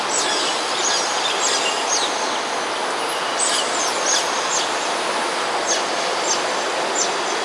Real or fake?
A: real